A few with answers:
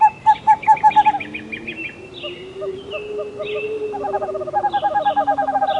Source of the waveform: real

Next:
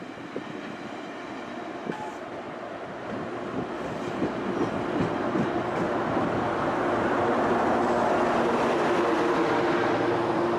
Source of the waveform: real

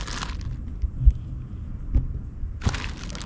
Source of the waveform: real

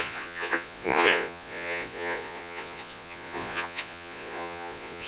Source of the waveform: fake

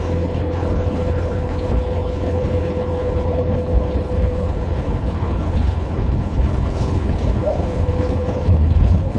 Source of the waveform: fake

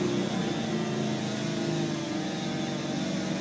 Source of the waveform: real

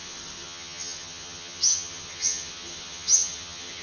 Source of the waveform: fake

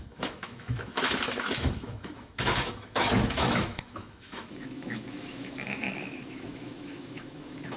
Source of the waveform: fake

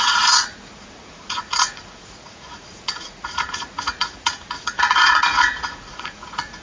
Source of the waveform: fake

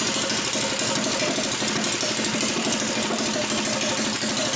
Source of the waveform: real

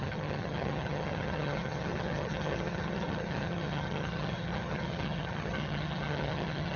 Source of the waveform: fake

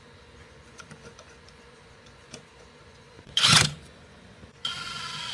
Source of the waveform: fake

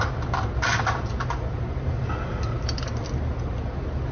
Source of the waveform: real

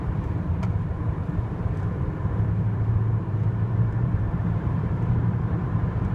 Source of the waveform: fake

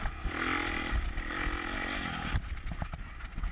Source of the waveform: real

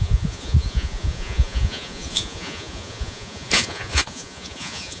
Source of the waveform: fake